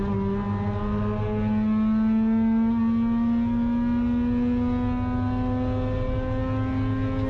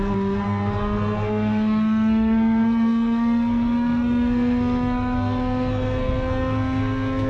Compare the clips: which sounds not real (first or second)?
second